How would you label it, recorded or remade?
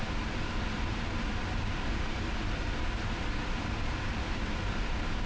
recorded